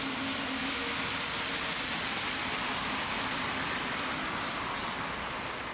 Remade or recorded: recorded